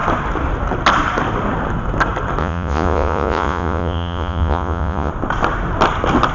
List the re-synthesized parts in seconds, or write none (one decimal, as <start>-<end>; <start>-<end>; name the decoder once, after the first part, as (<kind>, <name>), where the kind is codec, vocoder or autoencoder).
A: 2.4-5.1 (vocoder, Vocos)